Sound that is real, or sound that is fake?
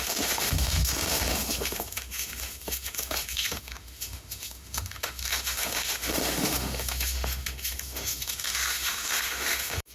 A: fake